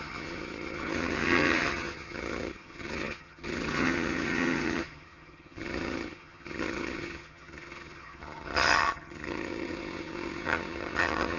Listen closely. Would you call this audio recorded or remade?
remade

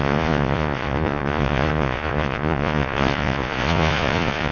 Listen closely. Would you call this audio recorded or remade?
remade